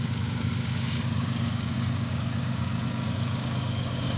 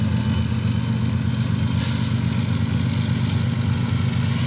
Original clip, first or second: second